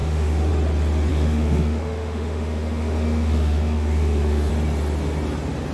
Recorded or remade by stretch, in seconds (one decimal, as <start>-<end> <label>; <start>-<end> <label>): 0.0-0.5 remade; 0.5-1.1 recorded; 1.1-4.5 remade; 4.5-5.7 recorded